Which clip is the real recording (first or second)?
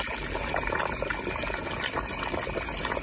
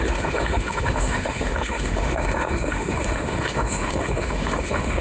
first